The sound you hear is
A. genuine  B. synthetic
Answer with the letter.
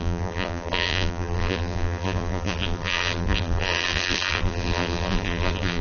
B